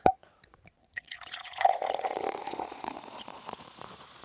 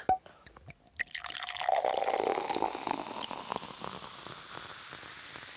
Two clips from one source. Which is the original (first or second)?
second